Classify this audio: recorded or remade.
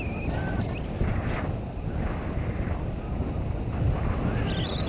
recorded